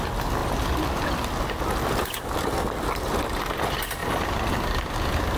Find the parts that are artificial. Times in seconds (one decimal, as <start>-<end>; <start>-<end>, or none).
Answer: none

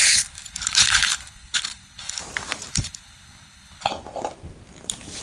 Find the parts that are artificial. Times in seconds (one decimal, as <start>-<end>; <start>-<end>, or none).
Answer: 0.0-2.2; 2.7-3.9

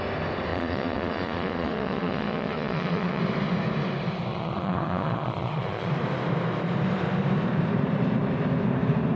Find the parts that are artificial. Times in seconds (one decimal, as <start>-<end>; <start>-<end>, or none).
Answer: 0.5-3.2; 4.3-5.9

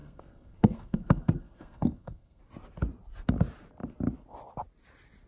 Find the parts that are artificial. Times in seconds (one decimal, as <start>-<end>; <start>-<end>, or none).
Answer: 0.0-2.4

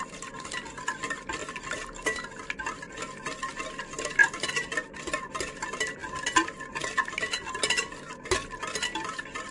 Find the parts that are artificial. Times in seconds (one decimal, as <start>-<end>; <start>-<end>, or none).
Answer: none